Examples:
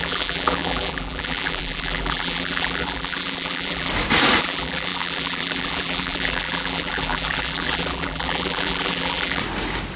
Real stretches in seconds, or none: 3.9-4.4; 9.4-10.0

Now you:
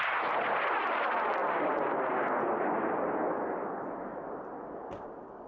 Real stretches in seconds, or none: 0.0-5.5

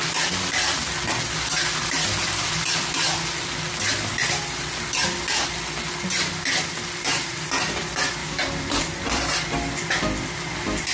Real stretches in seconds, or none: 0.0-2.2; 2.9-8.2; 9.5-10.9

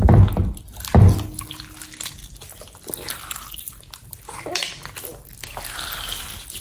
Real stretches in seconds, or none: 0.0-6.6